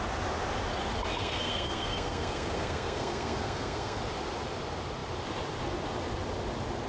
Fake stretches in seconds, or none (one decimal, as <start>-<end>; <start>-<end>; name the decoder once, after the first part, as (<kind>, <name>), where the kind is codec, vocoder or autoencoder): 1.2-4.0 (codec, SNAC)